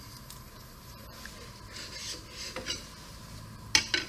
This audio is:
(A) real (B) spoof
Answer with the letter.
A